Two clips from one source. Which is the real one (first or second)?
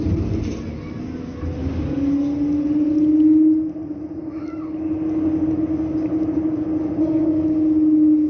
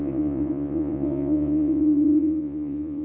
first